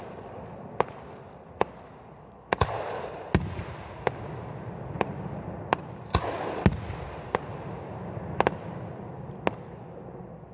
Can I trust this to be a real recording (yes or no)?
yes